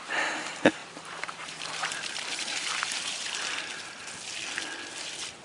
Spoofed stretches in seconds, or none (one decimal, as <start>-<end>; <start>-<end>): 0.8-3.7